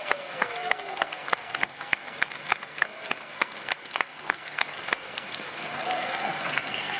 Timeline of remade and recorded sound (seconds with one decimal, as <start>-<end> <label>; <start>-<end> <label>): 0.0-7.0 remade